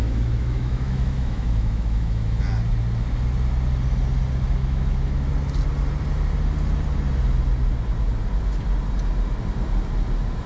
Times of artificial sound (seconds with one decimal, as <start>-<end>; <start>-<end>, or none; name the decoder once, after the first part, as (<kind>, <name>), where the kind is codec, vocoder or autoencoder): 0.0-2.4 (autoencoder, DAC-VAE); 4.6-5.3